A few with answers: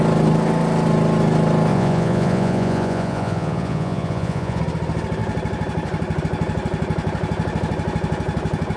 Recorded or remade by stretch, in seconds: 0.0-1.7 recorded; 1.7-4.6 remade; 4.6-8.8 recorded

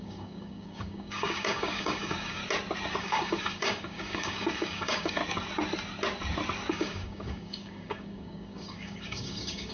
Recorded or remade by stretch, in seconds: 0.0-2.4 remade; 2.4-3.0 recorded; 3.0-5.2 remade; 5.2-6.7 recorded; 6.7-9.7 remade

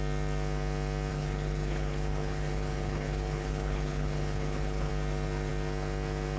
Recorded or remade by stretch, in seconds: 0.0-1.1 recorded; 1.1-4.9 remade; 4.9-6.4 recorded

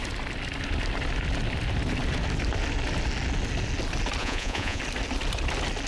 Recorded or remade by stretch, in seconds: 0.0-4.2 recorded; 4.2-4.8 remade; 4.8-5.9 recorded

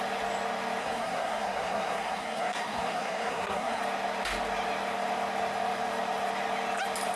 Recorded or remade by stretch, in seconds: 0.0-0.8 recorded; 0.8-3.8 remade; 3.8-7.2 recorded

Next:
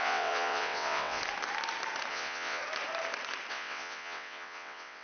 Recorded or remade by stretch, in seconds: 0.0-1.2 remade; 1.2-2.1 recorded; 2.1-2.6 remade; 2.6-3.5 recorded; 3.5-5.0 remade

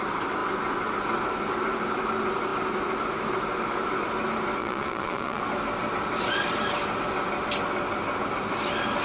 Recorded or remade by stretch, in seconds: 0.0-4.6 recorded; 4.6-5.4 remade; 5.4-9.0 recorded